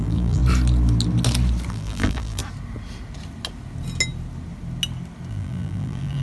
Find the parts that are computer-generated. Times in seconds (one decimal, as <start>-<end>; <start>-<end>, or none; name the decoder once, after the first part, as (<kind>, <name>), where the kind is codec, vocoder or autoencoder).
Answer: 0.0-0.4 (vocoder, BigVGAN v2); 1.7-2.4; 5.3-6.2